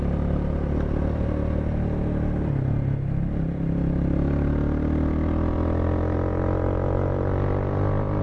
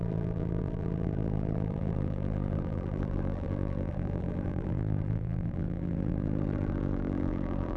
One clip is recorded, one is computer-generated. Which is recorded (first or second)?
first